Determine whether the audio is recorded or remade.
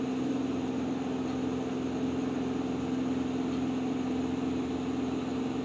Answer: recorded